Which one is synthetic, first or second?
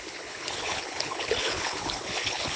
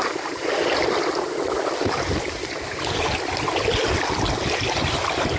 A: first